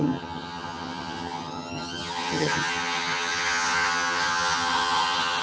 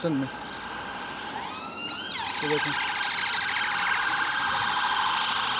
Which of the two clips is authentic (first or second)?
second